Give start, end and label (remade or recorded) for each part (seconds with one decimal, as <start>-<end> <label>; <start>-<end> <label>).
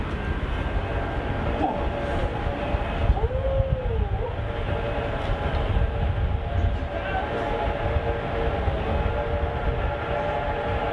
0.0-2.2 recorded; 2.2-2.9 remade; 2.9-10.9 recorded